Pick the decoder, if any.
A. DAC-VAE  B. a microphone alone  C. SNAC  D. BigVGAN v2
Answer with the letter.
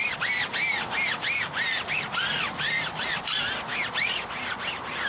B